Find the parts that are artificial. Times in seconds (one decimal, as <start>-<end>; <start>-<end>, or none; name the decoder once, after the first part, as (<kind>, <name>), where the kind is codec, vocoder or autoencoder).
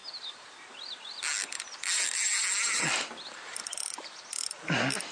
none